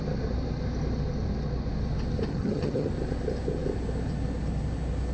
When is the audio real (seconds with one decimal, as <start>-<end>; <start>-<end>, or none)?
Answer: 0.0-2.3; 2.9-5.1